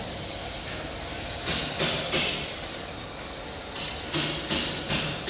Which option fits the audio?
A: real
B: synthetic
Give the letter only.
A